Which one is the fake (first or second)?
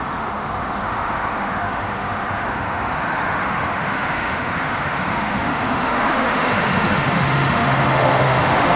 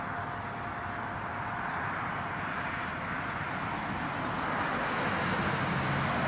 first